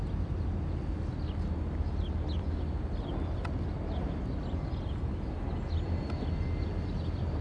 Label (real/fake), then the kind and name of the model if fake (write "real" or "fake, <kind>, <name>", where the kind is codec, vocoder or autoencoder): real